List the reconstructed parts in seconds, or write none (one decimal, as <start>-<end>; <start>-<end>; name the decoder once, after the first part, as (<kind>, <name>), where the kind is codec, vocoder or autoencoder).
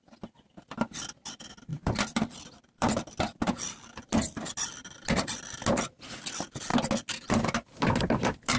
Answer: 1.7-5.6 (vocoder, BigVGAN v2)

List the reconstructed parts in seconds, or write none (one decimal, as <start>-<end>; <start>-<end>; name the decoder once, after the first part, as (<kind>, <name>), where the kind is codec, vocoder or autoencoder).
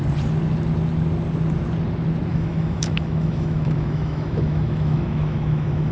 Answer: 2.3-5.9 (autoencoder, DAC-VAE)